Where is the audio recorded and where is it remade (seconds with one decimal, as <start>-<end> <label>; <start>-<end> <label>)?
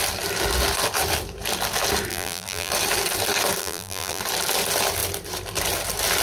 0.0-2.1 recorded; 2.1-2.7 remade; 2.7-3.6 recorded; 3.6-4.2 remade; 4.2-6.2 recorded